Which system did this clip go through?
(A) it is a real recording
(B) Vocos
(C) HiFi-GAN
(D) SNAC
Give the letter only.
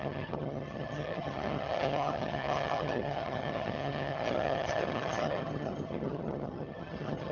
C